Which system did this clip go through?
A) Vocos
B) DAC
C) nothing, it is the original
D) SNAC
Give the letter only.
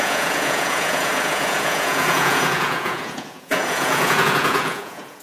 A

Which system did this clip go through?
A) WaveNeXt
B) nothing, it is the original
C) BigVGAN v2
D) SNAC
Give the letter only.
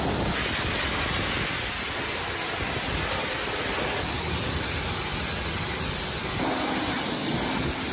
B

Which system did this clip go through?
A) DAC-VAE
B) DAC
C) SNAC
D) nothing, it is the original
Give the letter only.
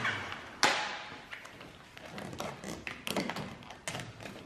D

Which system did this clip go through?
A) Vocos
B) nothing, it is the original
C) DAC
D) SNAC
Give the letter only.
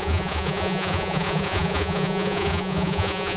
A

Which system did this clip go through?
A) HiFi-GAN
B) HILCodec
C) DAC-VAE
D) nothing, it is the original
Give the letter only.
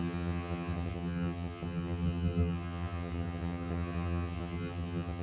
A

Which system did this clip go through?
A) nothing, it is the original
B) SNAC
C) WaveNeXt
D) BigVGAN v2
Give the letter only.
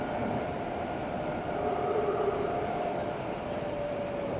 D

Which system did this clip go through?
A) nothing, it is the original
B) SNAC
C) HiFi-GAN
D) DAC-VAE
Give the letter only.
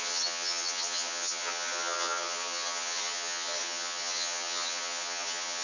C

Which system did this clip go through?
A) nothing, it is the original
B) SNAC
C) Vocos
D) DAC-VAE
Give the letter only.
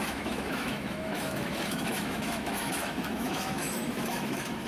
D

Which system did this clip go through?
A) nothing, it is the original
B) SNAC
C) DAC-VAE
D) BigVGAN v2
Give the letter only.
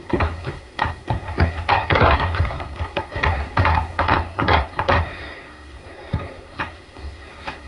B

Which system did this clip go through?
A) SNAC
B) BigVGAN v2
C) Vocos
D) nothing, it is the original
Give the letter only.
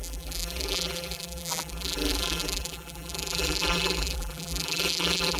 B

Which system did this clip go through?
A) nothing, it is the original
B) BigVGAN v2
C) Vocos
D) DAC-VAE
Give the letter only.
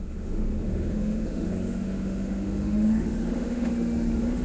D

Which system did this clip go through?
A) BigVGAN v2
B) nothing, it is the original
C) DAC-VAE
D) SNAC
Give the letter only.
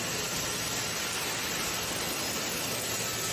B